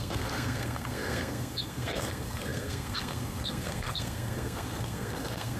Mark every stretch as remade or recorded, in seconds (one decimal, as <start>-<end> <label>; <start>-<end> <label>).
0.0-5.6 remade